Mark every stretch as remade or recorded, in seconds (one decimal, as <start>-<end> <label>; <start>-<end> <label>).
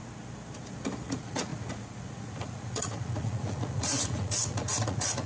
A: 0.0-0.6 recorded; 0.6-5.3 remade